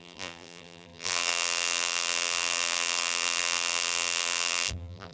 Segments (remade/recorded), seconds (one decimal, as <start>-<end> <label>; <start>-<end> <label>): 0.0-5.1 remade